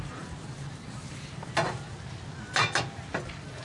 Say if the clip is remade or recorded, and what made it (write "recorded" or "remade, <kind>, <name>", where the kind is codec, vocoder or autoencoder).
recorded